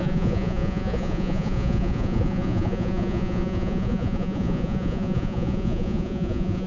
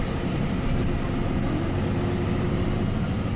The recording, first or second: second